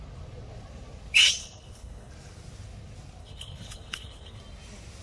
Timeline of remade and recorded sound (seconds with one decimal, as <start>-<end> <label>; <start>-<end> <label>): 0.0-1.4 recorded; 1.4-2.1 remade; 2.1-3.2 recorded; 3.2-4.4 remade; 4.4-5.0 recorded